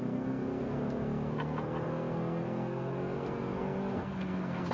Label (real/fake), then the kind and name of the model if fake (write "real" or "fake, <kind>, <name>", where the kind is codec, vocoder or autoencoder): fake, codec, SNAC